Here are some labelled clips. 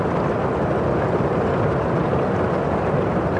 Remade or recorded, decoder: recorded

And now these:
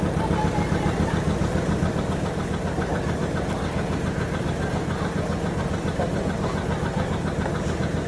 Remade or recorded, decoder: recorded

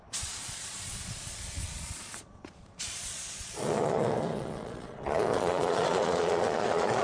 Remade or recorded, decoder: remade, vocoder, Vocos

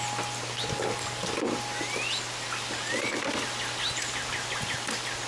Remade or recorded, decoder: recorded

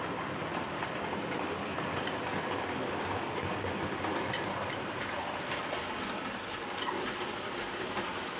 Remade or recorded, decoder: recorded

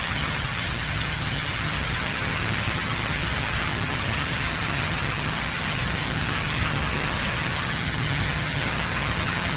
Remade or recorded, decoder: remade, vocoder, HiFi-GAN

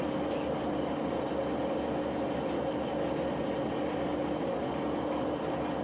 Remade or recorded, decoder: recorded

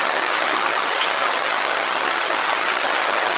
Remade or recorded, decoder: remade, vocoder, HiFi-GAN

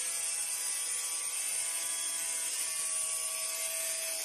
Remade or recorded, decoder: recorded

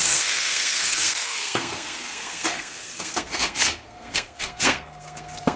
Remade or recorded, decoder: remade, codec, SNAC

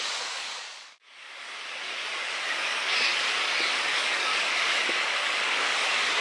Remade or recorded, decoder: remade, codec, DAC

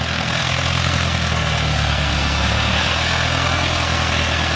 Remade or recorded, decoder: remade, codec, SNAC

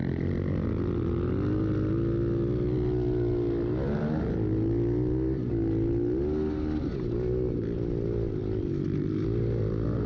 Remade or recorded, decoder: recorded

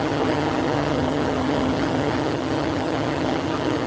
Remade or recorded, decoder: remade, vocoder, HiFi-GAN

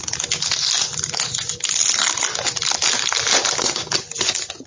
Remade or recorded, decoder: recorded